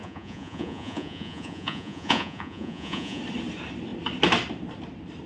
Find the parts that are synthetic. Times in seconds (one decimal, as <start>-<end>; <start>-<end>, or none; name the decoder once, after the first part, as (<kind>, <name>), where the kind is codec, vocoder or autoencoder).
0.0-3.2 (vocoder, Vocos)